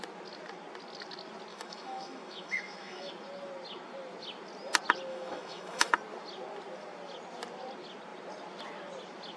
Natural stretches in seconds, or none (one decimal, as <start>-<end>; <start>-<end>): 0.0-1.5; 3.1-5.1; 5.9-9.4